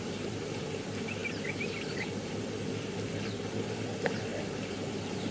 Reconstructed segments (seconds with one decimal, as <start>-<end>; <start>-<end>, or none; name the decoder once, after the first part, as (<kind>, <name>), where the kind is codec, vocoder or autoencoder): 0.0-0.7 (vocoder, BigVGAN v2)